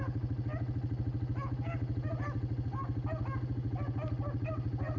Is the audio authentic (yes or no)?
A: yes